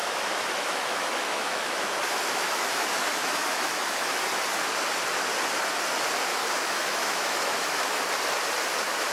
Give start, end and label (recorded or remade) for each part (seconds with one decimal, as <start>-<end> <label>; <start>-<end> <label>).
0.0-4.2 remade; 4.2-6.3 recorded; 6.3-8.0 remade; 8.0-9.1 recorded